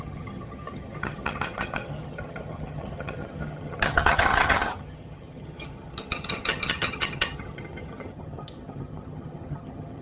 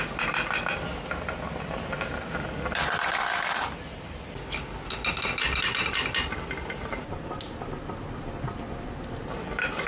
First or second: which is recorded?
second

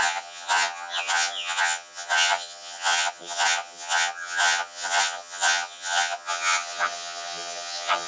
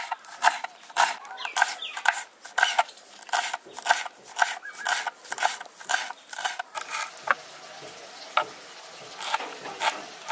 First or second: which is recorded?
second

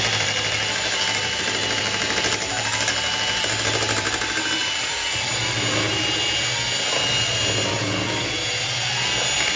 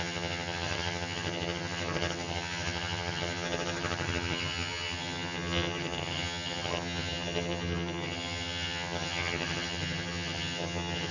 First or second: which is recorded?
first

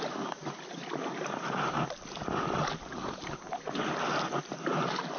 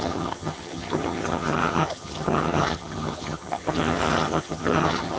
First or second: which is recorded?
first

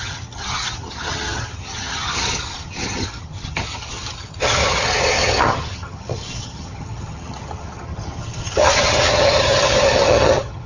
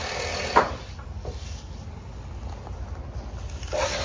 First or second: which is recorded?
second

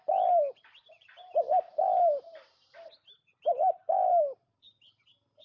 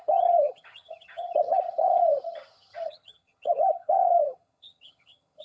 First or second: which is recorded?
first